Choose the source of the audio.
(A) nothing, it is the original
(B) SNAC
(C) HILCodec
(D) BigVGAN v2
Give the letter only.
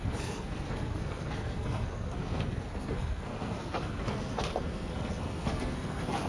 B